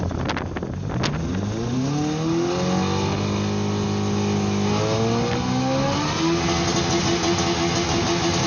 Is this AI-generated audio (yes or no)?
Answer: no